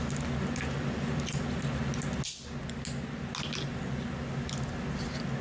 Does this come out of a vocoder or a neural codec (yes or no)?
no